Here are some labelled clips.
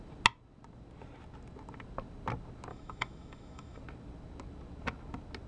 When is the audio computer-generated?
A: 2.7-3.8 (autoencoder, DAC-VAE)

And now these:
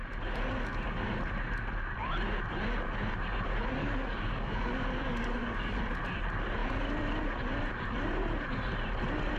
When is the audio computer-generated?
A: 3.8-5.8 (codec, DAC)

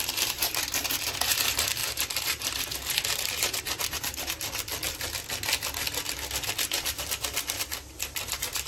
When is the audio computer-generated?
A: 0.0-4.7 (vocoder, BigVGAN v2); 8.0-8.7

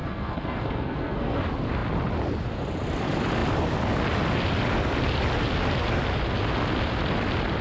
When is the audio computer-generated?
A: 0.0-1.4 (codec, SNAC)

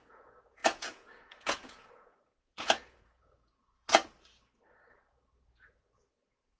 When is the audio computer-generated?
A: 0.0-4.0 (vocoder, Vocos); 4.9-6.6